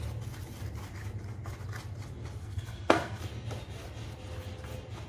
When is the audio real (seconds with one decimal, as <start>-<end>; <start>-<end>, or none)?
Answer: 0.0-2.4; 3.2-5.1